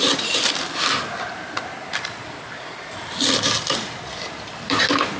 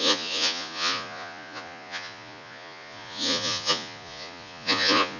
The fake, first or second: second